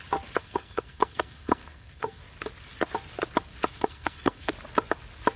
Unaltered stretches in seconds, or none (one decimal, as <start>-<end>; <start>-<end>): 0.0-0.4; 2.2-3.7; 4.5-5.4